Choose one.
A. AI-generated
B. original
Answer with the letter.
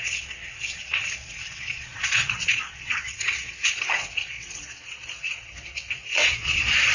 A